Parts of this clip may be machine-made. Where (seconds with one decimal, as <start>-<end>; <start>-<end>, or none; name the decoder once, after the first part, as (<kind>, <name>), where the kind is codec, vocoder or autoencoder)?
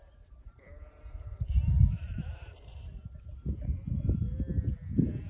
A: 0.0-3.2 (vocoder, BigVGAN v2)